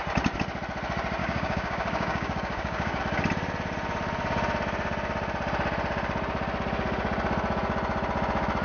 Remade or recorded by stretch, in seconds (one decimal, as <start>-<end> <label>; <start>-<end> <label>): 0.0-1.2 recorded; 1.2-3.0 remade; 3.0-8.6 recorded